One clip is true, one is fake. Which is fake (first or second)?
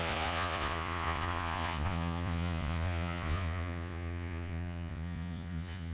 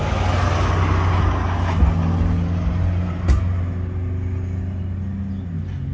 first